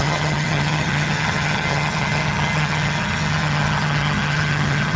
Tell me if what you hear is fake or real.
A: fake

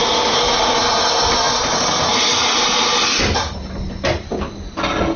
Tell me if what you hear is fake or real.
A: real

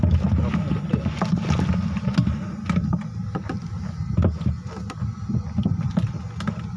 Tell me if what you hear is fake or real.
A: real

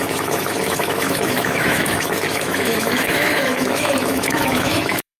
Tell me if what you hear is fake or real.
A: fake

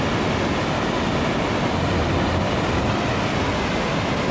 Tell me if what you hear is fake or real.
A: real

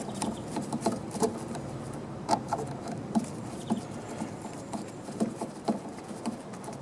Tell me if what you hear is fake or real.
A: fake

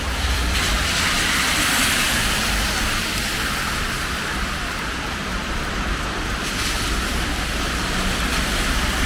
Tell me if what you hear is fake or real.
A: fake